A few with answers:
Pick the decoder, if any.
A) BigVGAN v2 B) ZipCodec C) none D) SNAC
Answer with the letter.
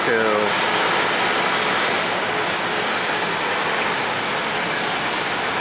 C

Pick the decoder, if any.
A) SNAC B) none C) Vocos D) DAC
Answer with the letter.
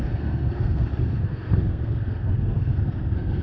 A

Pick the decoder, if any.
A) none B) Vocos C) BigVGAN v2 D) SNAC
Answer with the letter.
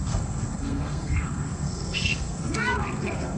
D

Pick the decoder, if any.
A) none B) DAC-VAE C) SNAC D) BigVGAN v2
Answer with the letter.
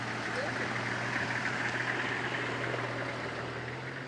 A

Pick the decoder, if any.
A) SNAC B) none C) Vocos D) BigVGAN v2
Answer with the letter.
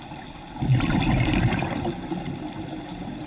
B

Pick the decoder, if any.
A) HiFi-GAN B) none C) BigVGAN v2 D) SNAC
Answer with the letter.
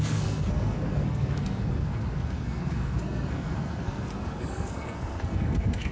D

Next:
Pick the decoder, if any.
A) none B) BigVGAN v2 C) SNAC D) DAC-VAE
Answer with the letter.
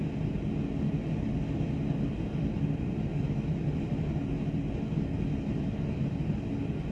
A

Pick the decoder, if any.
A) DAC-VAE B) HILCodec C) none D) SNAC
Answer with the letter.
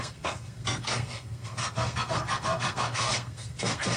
D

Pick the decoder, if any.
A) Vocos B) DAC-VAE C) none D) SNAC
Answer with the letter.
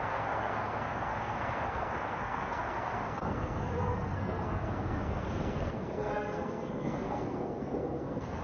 D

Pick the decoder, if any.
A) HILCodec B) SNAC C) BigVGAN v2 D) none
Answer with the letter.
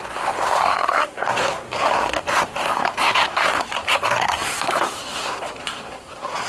B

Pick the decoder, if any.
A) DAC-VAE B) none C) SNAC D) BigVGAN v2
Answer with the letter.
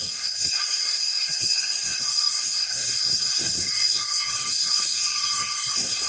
C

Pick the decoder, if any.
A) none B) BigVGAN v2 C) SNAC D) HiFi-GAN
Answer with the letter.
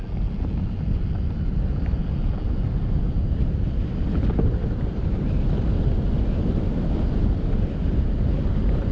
A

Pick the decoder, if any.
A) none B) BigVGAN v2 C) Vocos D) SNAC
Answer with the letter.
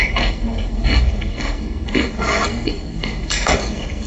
D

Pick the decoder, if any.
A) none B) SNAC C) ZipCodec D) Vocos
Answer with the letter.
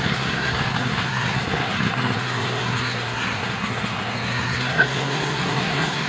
B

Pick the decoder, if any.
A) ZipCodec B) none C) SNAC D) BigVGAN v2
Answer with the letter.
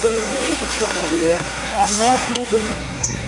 C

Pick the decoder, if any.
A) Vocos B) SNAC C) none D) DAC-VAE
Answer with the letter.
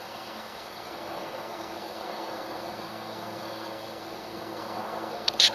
B